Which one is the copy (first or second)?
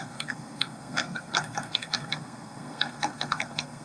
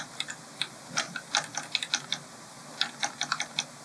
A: first